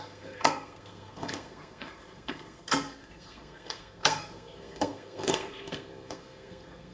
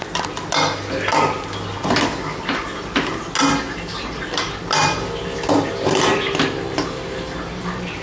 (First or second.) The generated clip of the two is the first